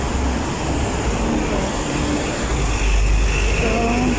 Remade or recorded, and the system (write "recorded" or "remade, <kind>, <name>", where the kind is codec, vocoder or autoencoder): recorded